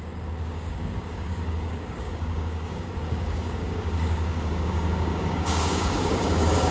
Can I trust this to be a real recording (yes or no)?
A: no